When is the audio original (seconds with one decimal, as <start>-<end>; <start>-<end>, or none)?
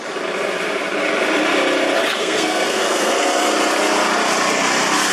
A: 0.0-2.2; 3.5-5.1